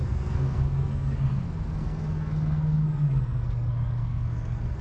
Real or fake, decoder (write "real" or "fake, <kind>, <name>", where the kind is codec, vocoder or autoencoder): fake, codec, SNAC